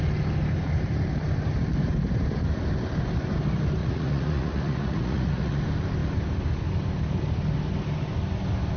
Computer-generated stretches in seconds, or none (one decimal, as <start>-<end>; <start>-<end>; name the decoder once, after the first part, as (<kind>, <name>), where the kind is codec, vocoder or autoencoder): 3.8-5.6 (vocoder, Vocos)